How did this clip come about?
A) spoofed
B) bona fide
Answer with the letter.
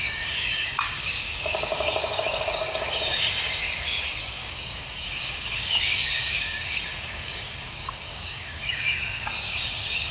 A